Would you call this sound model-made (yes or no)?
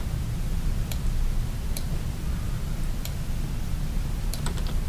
no